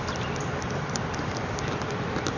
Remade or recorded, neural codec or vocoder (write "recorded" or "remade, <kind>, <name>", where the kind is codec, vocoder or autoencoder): remade, vocoder, BigVGAN v2